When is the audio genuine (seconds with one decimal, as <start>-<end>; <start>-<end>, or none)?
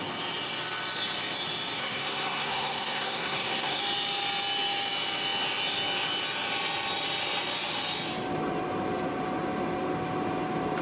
0.0-1.8; 3.8-10.8